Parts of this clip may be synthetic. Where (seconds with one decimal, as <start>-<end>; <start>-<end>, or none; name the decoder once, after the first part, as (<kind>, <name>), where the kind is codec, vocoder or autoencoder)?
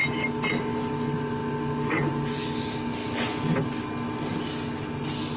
none